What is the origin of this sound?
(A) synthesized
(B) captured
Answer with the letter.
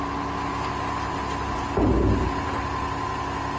B